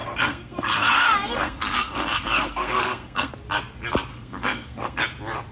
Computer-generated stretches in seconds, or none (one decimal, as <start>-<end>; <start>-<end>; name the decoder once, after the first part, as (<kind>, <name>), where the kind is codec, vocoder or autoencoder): 0.0-3.3 (codec, SNAC); 4.1-5.0